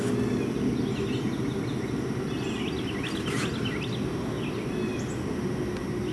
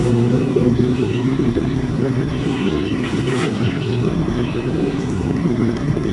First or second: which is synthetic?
second